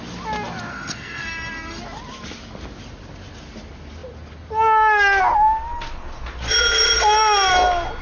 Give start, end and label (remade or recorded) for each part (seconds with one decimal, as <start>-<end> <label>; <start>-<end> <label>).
0.0-0.7 recorded; 0.7-1.8 remade; 1.8-8.0 recorded